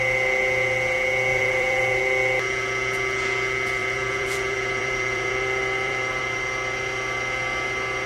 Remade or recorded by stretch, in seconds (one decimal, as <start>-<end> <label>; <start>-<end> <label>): 0.0-1.3 recorded; 1.3-2.0 remade; 2.0-3.8 recorded; 3.8-6.2 remade; 6.2-8.1 recorded